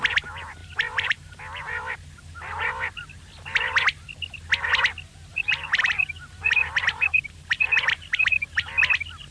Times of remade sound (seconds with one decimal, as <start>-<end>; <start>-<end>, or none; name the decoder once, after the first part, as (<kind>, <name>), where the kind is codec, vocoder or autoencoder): 0.6-1.4 (vocoder, BigVGAN v2); 5.3-8.7